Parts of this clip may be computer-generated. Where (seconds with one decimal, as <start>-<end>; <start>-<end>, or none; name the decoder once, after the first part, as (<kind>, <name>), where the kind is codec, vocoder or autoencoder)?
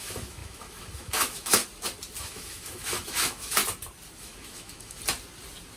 0.0-1.6 (autoencoder, DAC-VAE); 2.2-3.6; 4.2-5.0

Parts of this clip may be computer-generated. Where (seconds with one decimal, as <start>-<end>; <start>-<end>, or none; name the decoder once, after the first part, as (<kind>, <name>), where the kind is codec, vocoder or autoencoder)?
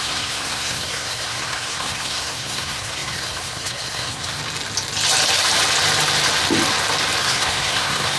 0.0-4.4 (codec, SNAC); 7.2-8.2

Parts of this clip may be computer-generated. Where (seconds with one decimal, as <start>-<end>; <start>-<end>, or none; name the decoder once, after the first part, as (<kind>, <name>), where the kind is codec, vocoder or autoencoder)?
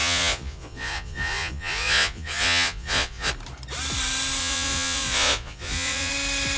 0.0-3.3 (vocoder, Vocos); 4.4-6.1